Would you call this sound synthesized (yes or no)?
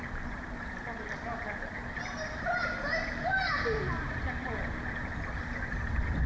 no